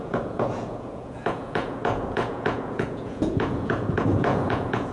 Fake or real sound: fake